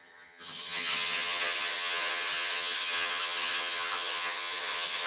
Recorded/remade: remade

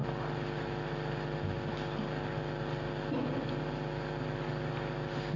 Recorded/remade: recorded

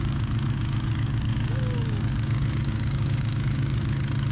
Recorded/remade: remade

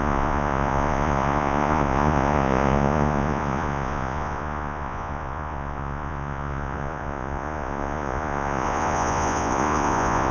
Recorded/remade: remade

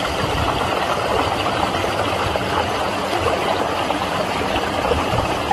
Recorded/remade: recorded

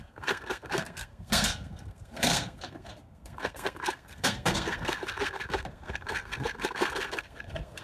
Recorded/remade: remade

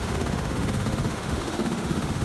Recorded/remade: remade